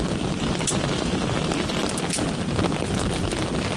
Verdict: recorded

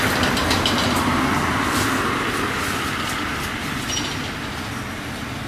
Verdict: recorded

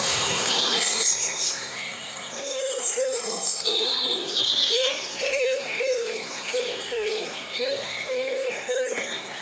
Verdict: remade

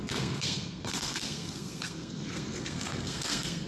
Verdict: remade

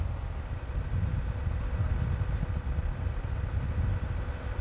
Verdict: recorded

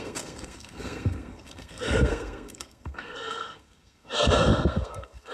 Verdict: remade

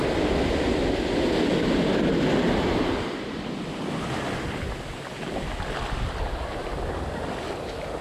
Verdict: recorded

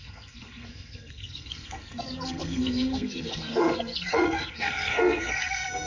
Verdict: remade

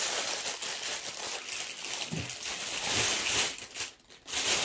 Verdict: recorded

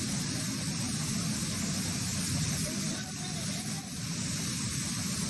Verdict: recorded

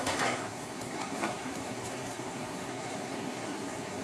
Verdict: remade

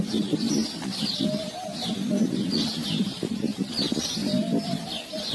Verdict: recorded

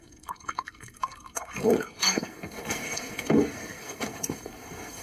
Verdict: remade